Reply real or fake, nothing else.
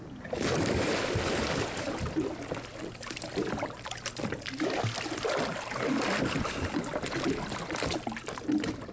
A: real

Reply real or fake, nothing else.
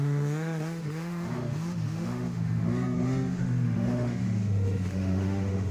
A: fake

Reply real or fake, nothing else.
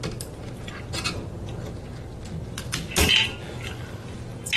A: real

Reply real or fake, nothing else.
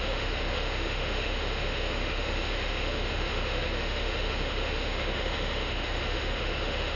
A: fake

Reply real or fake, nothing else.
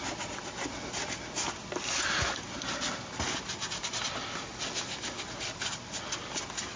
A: real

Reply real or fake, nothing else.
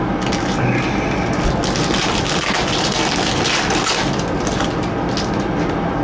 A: real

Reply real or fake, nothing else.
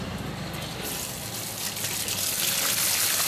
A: real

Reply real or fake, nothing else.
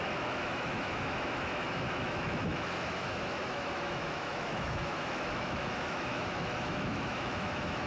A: fake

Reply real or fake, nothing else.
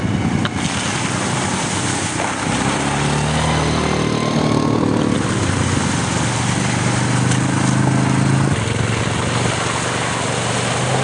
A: real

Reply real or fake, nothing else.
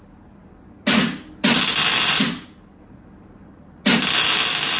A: real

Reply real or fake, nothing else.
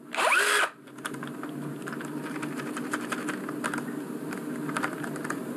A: real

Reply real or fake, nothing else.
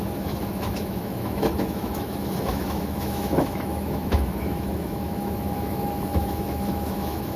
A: fake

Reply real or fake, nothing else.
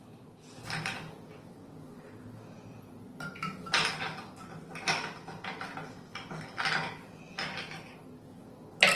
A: real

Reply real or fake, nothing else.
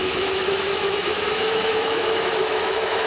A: fake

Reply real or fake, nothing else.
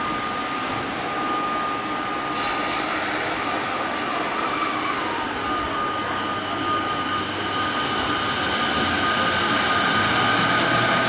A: real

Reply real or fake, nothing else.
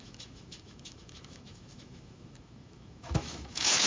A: fake